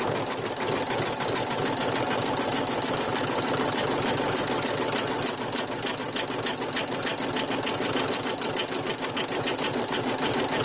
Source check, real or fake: real